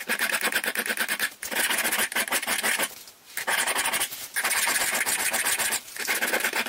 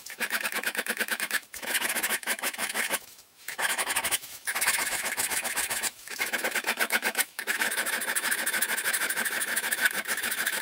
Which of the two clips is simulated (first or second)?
second